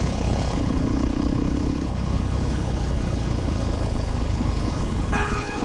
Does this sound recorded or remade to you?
remade